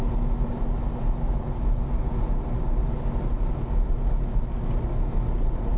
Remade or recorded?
recorded